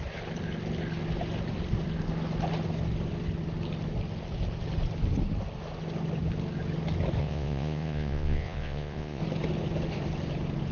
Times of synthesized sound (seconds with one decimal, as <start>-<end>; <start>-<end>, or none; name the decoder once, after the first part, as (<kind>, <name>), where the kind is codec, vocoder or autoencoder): 7.2-9.2 (vocoder, Vocos)